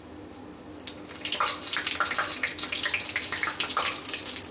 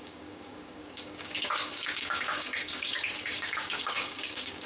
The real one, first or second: first